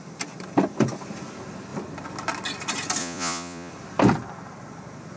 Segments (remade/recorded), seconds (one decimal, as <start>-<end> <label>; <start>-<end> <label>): 0.0-3.0 recorded; 3.0-3.7 remade; 3.7-5.2 recorded